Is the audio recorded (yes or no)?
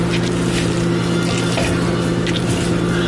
yes